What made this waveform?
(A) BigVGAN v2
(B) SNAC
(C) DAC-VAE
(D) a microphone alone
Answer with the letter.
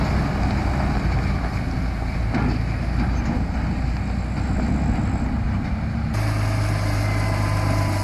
D